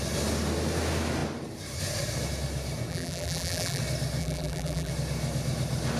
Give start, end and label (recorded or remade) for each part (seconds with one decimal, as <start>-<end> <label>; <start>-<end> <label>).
0.0-2.9 recorded; 2.9-3.8 remade; 3.8-4.2 recorded; 4.2-4.9 remade; 4.9-6.0 recorded